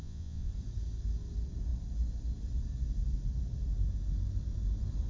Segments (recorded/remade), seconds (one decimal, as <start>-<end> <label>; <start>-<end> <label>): 0.0-0.5 remade; 0.5-5.1 recorded